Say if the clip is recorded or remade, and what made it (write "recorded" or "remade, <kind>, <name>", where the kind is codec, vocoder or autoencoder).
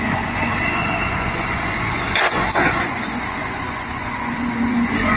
remade, vocoder, Vocos